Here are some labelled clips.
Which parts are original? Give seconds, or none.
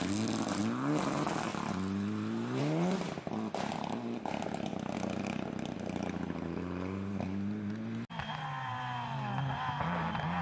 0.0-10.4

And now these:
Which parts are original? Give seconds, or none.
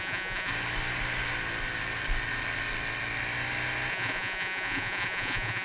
0.5-3.9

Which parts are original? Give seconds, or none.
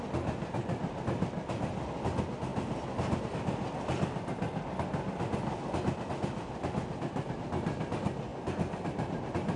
0.0-9.6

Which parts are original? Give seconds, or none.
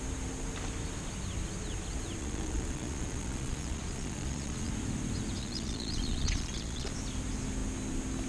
0.0-2.2; 4.7-5.4; 6.9-8.3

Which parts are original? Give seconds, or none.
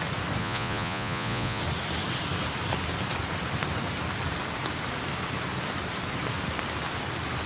0.0-0.4; 1.6-7.5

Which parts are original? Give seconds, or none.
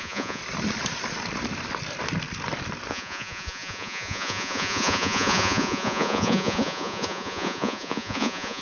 0.4-2.9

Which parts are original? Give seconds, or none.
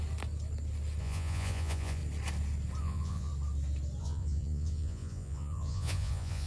0.0-1.0; 2.0-2.8; 3.3-4.0